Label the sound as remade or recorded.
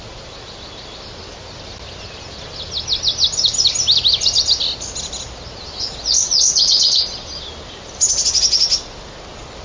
recorded